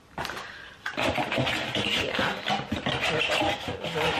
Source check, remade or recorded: recorded